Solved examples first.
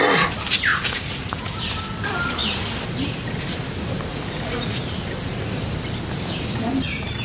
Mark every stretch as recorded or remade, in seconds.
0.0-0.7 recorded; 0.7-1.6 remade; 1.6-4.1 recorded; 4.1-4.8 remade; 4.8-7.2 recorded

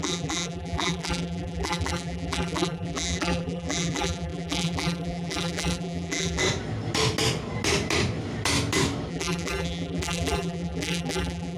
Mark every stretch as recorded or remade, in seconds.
0.0-6.4 remade; 6.4-9.1 recorded; 9.1-11.6 remade